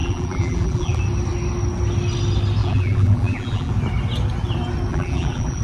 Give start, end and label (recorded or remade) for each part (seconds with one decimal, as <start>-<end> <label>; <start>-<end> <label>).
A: 0.0-1.0 remade; 1.0-2.6 recorded; 2.6-3.7 remade; 3.7-4.9 recorded; 4.9-5.6 remade